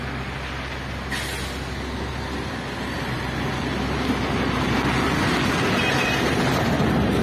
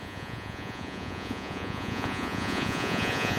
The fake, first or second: second